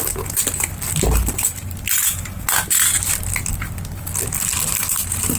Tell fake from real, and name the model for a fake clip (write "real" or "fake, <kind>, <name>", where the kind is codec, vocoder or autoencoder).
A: real